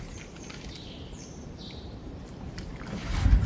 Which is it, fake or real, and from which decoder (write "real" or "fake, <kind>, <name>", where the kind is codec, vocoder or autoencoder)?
fake, vocoder, BigVGAN v2